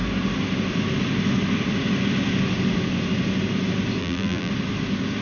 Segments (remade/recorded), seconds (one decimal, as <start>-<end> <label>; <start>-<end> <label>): 0.0-4.0 recorded; 4.0-4.5 remade; 4.5-5.2 recorded